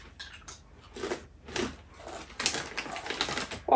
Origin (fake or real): real